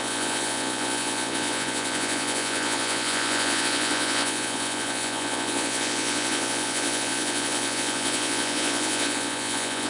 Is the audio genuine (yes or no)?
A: no